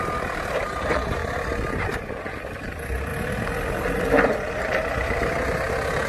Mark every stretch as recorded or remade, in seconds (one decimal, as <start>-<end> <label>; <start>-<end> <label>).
0.0-1.2 remade; 1.2-1.8 recorded; 1.8-3.1 remade; 3.1-4.5 recorded; 4.5-6.1 remade